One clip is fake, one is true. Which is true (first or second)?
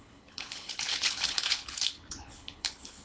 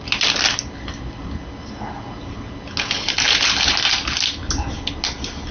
second